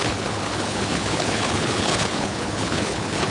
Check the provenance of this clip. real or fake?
fake